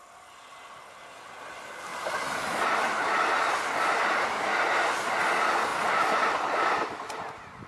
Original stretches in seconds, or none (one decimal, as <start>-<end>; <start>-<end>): 0.0-7.7